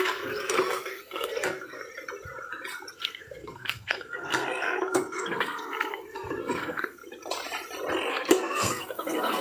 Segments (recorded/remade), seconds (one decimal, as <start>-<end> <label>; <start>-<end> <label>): 0.0-1.8 remade; 1.8-2.9 recorded; 2.9-7.0 remade; 7.0-8.1 recorded; 8.1-9.4 remade